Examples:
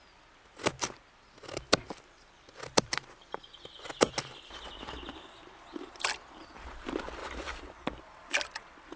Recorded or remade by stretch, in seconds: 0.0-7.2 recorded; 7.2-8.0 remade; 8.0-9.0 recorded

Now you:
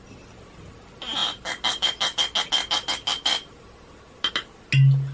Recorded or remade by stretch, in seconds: 0.0-5.1 recorded

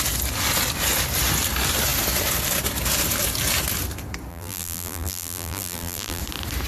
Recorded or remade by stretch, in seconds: 0.0-4.3 recorded; 4.3-6.2 remade; 6.2-6.7 recorded